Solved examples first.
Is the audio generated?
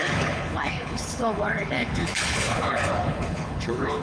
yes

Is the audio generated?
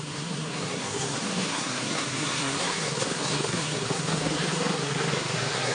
yes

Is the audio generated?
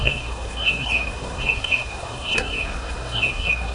yes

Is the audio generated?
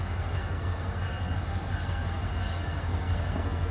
yes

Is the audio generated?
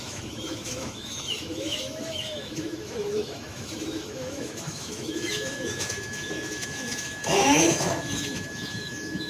yes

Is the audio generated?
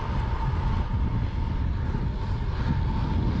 no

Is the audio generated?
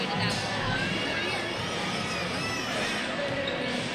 no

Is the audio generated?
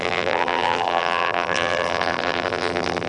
yes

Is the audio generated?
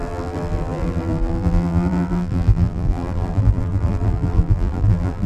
yes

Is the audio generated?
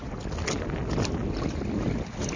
no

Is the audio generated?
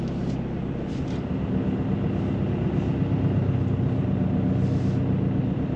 no